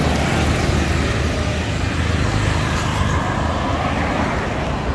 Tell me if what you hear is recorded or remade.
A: recorded